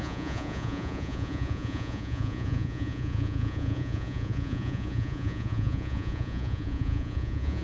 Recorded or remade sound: remade